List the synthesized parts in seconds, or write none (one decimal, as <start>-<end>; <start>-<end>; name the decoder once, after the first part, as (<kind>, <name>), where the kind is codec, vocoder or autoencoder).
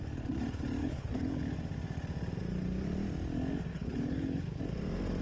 0.8-1.4 (codec, HILCodec); 3.7-4.6